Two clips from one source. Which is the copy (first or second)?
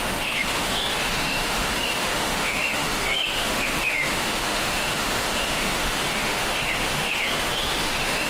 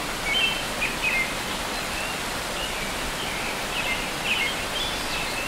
first